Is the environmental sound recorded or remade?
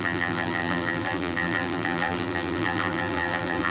remade